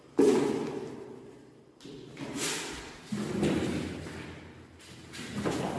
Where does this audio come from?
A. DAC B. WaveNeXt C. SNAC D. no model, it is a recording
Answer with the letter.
D